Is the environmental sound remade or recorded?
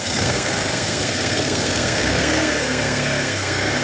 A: remade